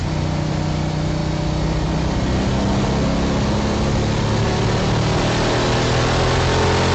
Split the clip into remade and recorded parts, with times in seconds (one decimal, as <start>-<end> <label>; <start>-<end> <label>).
0.0-6.9 recorded